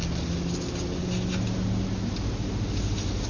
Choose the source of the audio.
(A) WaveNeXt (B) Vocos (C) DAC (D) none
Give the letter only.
D